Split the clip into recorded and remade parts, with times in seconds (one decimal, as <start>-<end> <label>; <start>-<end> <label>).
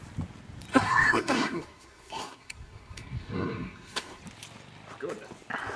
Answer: 0.0-0.7 recorded; 0.7-4.2 remade; 4.2-5.8 recorded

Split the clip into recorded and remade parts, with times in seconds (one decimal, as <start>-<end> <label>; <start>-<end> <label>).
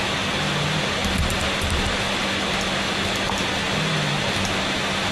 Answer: 0.0-5.1 recorded